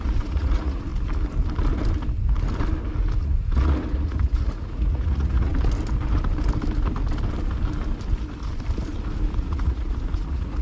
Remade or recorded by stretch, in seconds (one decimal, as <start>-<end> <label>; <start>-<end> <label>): 0.0-0.9 remade; 0.9-3.2 recorded; 3.2-5.5 remade; 5.5-9.4 recorded; 9.4-10.6 remade